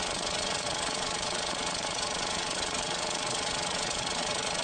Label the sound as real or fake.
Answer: fake